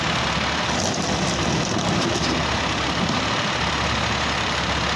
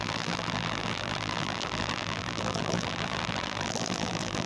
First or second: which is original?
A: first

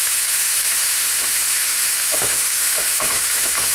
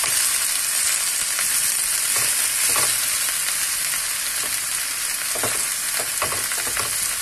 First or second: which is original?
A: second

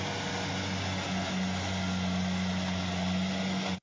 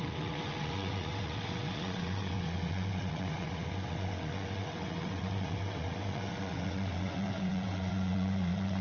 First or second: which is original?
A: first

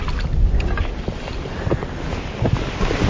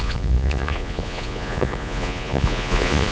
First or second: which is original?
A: first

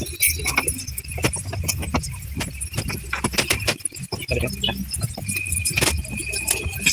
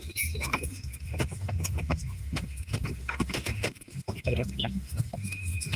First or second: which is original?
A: first